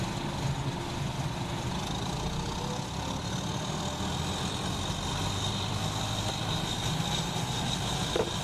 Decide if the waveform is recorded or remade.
recorded